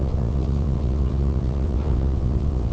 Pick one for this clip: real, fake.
fake